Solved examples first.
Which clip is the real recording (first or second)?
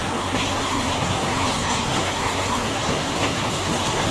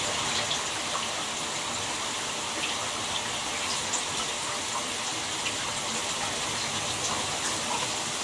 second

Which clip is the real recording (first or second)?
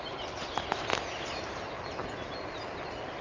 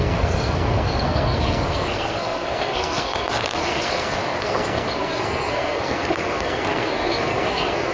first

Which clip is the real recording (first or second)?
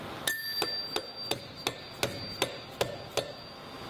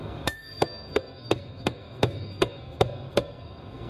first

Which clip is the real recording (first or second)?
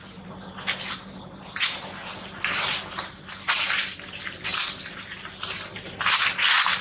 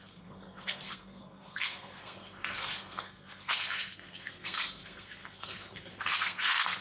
first